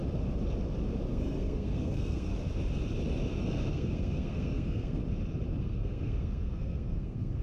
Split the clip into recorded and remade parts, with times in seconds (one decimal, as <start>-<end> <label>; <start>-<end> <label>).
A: 0.0-1.1 recorded; 1.1-2.3 remade; 2.3-3.4 recorded; 3.4-5.0 remade; 5.0-5.6 recorded; 5.6-7.4 remade